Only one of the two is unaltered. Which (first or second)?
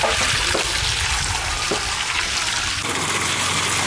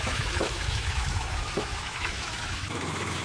first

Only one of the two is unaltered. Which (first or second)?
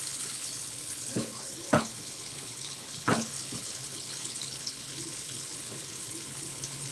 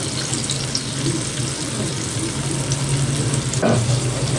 second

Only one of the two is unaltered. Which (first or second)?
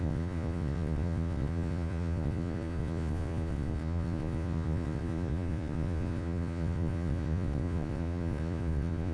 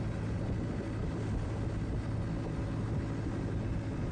second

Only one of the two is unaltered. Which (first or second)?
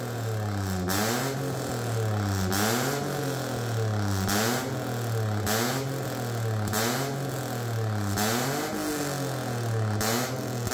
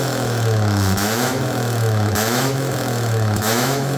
first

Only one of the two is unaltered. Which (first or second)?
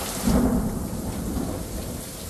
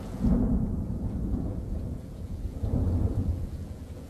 first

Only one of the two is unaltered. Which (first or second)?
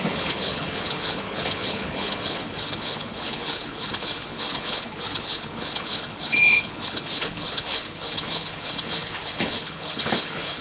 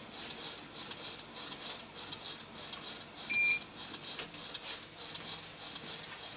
second